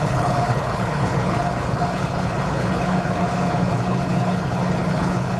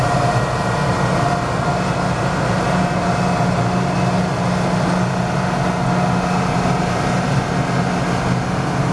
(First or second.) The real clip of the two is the second